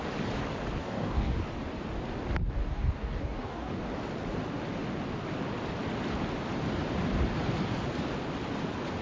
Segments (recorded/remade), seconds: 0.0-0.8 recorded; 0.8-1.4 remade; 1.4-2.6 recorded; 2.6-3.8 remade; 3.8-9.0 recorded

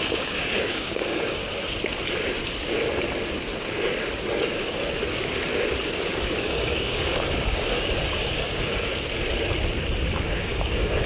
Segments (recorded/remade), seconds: 0.0-1.4 remade; 1.4-6.4 recorded; 6.4-8.9 remade; 8.9-10.2 recorded; 10.2-11.1 remade

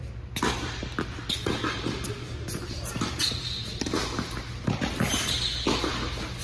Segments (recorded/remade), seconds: 0.0-6.4 recorded

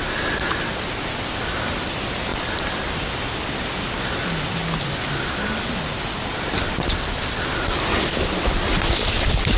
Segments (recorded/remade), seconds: 0.0-9.6 recorded

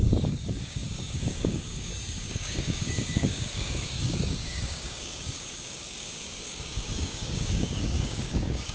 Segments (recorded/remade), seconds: 0.0-8.7 remade